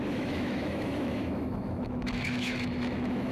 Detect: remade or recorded remade